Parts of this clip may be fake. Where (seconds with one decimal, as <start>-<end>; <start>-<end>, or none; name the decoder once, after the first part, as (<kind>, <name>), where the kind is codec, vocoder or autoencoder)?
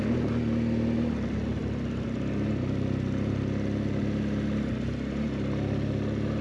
none